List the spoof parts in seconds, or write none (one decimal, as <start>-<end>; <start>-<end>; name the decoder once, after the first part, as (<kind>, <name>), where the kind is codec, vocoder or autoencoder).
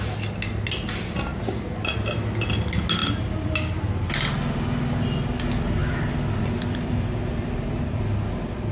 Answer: 1.3-1.8 (vocoder, BigVGAN v2); 5.8-8.0